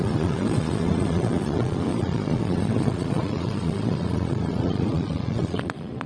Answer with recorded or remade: remade